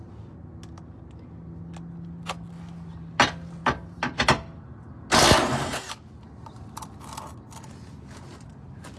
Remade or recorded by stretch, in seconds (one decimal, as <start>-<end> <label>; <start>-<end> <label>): 0.0-9.0 recorded